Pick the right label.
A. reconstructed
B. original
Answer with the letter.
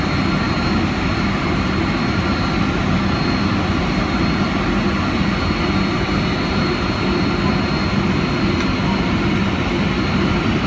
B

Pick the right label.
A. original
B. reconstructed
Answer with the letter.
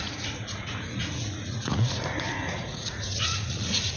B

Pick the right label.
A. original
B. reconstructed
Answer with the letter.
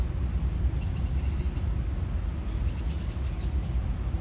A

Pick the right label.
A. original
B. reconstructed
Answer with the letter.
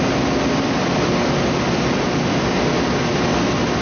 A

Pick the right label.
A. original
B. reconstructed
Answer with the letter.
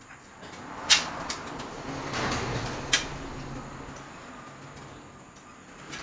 A